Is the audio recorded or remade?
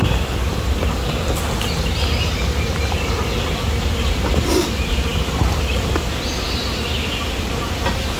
recorded